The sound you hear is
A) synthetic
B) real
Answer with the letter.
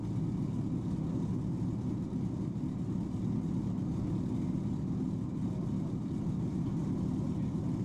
B